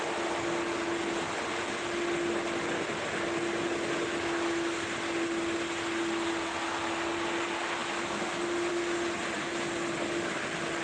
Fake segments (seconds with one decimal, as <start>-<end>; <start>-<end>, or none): none